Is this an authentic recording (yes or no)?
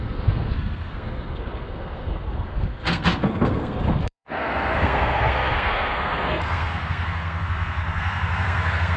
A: no